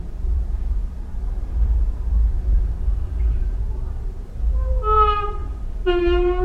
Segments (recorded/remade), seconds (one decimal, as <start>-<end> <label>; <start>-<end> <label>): 0.0-6.4 remade